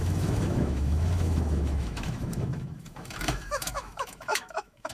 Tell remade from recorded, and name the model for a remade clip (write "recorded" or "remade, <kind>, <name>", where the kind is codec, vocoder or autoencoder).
remade, autoencoder, DAC-VAE